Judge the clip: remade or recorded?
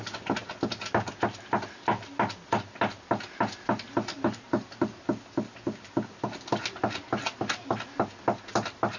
recorded